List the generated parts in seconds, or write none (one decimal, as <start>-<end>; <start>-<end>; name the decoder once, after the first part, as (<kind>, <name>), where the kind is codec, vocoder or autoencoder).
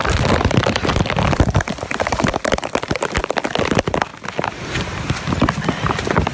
0.0-3.6 (vocoder, BigVGAN v2)